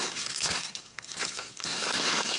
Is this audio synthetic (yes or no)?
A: yes